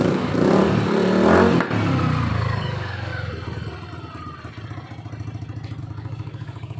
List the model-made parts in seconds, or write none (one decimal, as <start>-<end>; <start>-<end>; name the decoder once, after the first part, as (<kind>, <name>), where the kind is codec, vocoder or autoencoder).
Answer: 0.0-0.6 (codec, DAC); 2.3-3.1; 5.8-6.8